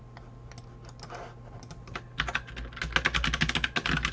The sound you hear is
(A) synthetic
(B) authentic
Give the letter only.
B